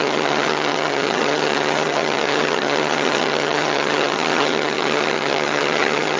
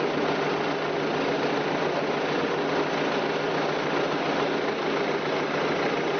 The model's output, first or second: first